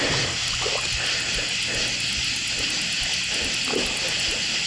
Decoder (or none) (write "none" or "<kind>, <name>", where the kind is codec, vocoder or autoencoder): none